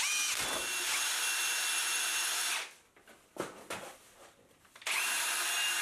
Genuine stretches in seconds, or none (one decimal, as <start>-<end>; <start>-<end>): 0.0-5.8